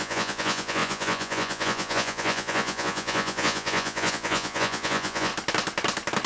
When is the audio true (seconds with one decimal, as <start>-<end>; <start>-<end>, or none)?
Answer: 5.3-6.3